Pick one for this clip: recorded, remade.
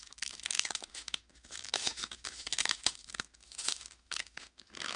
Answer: remade